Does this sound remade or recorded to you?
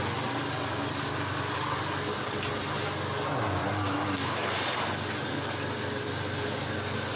recorded